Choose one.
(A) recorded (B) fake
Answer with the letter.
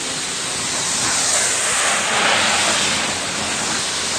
A